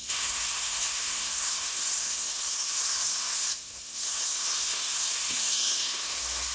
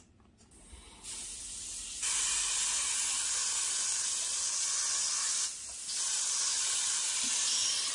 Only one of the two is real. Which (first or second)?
second